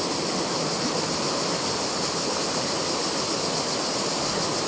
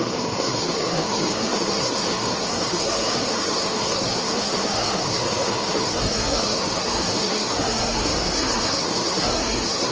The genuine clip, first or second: first